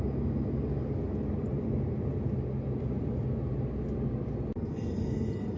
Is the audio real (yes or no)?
yes